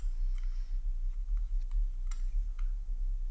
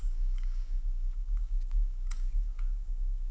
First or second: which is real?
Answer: first